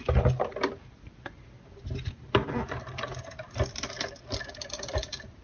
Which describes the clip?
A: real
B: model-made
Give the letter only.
A